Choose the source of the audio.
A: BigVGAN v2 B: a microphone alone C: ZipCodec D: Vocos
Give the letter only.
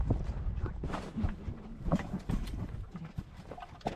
A